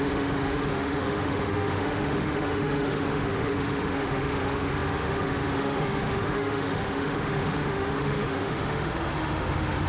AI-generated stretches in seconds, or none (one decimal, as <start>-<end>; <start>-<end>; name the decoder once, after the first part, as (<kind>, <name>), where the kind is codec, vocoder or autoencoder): 0.0-9.9 (autoencoder, DAC-VAE)